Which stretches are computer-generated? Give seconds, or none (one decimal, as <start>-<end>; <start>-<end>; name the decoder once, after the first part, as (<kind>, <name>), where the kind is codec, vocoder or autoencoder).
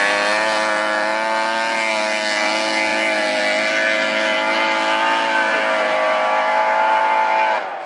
none